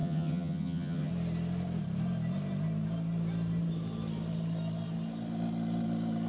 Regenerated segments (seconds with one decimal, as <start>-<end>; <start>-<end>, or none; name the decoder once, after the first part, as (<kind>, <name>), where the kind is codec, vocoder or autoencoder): 0.0-1.1 (vocoder, HiFi-GAN)